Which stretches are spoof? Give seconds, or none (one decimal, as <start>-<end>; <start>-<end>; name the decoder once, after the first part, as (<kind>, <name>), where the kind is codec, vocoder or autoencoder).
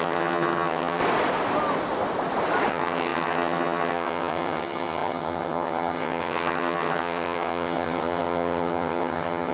0.0-1.0 (vocoder, HiFi-GAN); 2.7-9.5